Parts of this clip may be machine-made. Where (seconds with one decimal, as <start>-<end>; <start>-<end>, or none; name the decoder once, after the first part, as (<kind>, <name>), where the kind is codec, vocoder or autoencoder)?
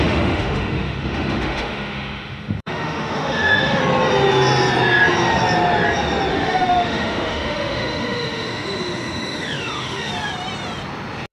0.0-3.8 (autoencoder, DAC-VAE); 6.3-10.1